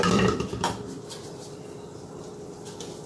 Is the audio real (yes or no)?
no